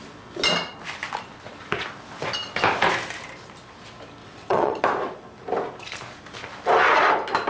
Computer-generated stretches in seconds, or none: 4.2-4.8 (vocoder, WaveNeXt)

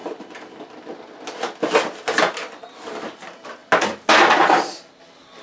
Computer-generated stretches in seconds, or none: none

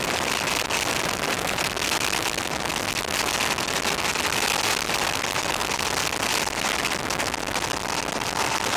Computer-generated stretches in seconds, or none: none

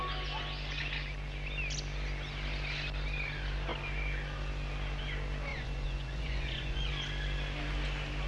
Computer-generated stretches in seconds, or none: 5.5-6.9 (vocoder, Vocos)

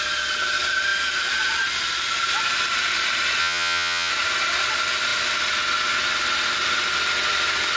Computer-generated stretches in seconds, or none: 3.4-4.1 (vocoder, HiFi-GAN)

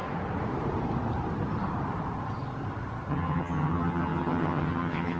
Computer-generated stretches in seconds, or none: 3.1-5.2 (vocoder, HiFi-GAN)

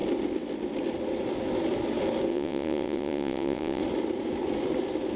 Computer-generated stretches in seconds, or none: 2.3-3.8 (vocoder, WaveNeXt)

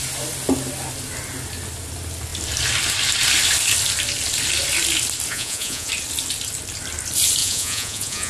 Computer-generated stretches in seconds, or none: 5.3-5.9 (vocoder, Vocos); 7.4-8.3